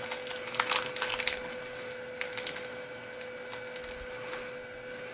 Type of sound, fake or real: real